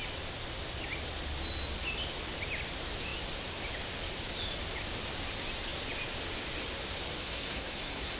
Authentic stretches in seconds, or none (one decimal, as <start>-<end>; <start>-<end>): 0.0-7.2